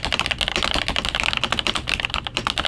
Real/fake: real